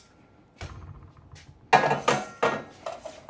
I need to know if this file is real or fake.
real